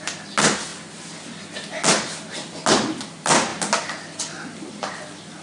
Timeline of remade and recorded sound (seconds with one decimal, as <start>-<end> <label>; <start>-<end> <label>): 0.0-5.4 recorded